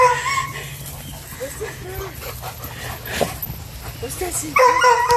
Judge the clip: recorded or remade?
recorded